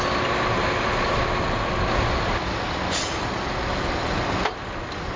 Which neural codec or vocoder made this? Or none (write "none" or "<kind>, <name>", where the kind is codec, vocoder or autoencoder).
none